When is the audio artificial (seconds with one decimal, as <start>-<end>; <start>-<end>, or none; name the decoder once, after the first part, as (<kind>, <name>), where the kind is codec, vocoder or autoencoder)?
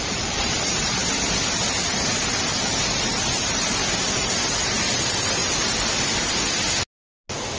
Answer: 0.0-1.0 (vocoder, BigVGAN v2); 3.1-3.8; 4.5-5.4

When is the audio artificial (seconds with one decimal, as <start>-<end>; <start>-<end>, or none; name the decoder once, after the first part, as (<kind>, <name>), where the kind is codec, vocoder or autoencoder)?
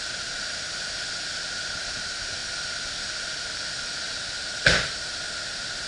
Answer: none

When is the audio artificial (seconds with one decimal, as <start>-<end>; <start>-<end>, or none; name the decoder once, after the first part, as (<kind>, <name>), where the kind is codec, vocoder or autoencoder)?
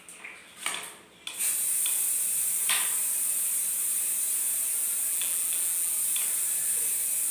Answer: 5.1-5.9 (vocoder, BigVGAN v2)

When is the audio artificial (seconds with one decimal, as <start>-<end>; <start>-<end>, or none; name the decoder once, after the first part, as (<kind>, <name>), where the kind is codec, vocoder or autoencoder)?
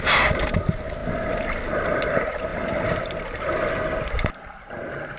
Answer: none